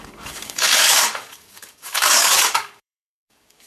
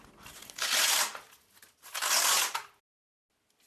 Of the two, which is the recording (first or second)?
second